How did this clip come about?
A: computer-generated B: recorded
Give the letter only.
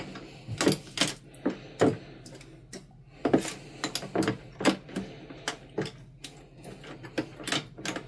B